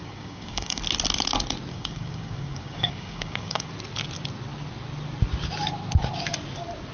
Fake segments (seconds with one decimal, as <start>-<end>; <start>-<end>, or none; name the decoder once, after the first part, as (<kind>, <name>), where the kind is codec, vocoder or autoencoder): 0.0-0.8 (codec, DAC); 1.7-3.7